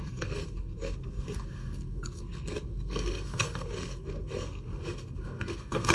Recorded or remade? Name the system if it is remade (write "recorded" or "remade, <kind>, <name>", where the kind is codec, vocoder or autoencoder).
remade, codec, SNAC